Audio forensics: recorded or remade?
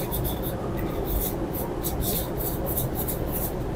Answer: recorded